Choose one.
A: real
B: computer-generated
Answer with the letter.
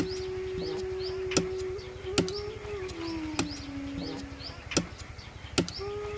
A